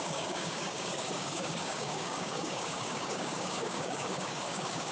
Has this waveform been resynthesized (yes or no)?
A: yes